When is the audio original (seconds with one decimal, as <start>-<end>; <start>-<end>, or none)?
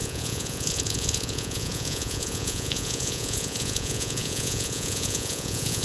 none